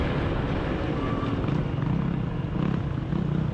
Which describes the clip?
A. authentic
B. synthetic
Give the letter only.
A